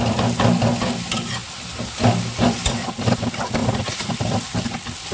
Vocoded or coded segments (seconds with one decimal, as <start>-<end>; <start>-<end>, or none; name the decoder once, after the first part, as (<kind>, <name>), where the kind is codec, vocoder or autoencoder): 3.6-4.1 (vocoder, Vocos)